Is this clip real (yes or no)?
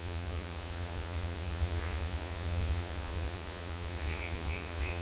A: no